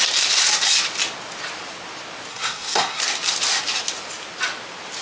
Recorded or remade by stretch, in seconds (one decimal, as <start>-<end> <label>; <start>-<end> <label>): 0.0-2.3 recorded; 2.3-3.0 remade; 3.0-5.0 recorded